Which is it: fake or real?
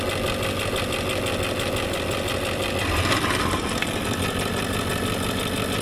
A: real